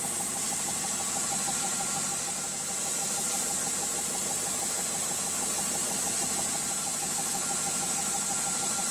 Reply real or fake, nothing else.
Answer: real